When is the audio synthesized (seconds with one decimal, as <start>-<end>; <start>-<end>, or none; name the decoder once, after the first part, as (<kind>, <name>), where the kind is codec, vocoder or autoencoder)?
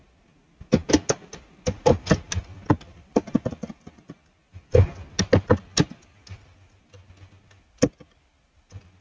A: none